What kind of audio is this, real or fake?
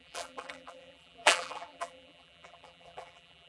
fake